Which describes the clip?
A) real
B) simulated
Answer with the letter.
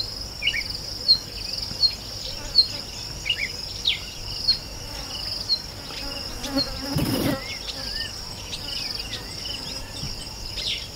A